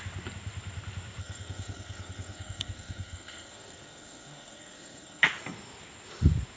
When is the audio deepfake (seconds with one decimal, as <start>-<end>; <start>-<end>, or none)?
1.2-5.2